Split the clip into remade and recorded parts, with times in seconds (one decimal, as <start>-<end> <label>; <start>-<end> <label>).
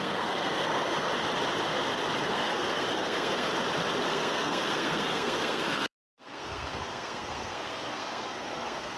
0.0-1.1 remade; 1.1-2.2 recorded; 2.2-3.5 remade; 3.5-4.1 recorded; 4.1-9.0 remade